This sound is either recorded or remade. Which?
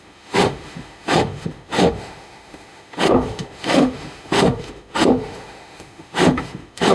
remade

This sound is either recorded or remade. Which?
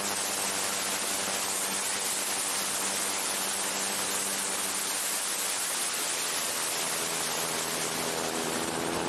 recorded